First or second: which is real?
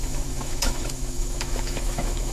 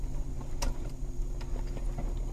second